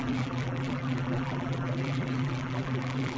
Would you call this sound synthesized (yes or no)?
yes